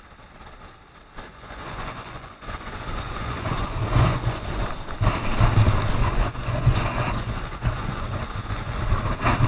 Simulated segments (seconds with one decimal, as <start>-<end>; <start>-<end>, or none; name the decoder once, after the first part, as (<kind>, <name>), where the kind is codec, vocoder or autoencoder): 1.3-4.7 (vocoder, Vocos); 6.0-8.8